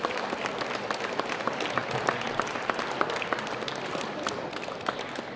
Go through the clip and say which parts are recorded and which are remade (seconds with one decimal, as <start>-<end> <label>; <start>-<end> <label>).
0.0-5.4 recorded